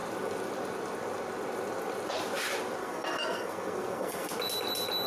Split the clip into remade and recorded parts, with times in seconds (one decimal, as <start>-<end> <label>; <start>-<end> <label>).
0.0-2.8 recorded; 2.8-4.3 remade; 4.3-5.1 recorded

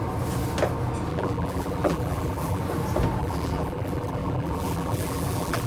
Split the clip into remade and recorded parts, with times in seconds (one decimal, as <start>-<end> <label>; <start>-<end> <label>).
0.0-1.1 recorded; 1.1-2.6 remade; 2.6-3.2 recorded; 3.2-5.7 remade

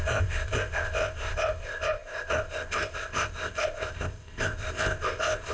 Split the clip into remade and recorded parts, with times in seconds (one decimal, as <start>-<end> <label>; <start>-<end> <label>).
0.0-5.5 remade

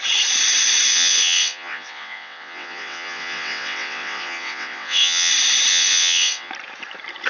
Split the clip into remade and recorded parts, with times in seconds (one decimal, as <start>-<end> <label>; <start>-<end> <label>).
0.0-0.9 recorded; 0.9-5.3 remade; 5.3-5.7 recorded; 5.7-6.5 remade; 6.5-7.3 recorded

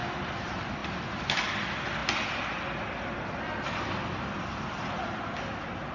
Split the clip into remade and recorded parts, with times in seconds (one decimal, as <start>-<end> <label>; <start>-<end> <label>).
0.0-5.9 recorded

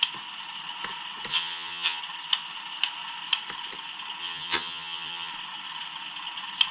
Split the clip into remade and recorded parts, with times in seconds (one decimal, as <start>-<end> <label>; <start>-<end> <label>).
0.0-1.3 recorded; 1.3-2.0 remade; 2.0-4.2 recorded; 4.2-5.3 remade; 5.3-6.7 recorded

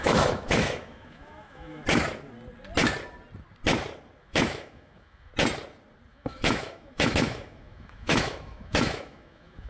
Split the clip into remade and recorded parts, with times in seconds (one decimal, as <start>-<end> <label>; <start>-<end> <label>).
0.0-1.8 remade; 1.8-4.2 recorded; 4.2-5.3 remade; 5.3-6.1 recorded; 6.1-9.7 remade

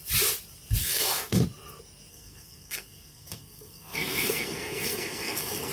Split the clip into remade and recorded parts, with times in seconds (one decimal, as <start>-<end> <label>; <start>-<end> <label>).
0.0-0.8 recorded; 0.8-1.4 remade; 1.4-2.1 recorded; 2.1-5.7 remade